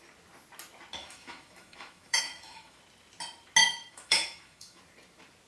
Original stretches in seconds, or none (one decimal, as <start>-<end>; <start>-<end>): 0.0-1.0; 2.8-3.6; 4.8-5.5